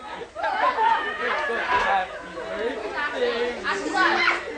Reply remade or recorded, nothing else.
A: recorded